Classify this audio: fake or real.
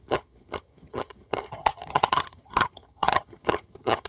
fake